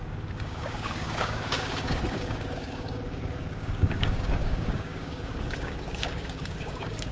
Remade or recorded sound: remade